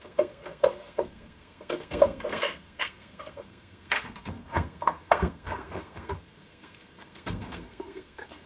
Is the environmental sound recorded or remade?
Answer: remade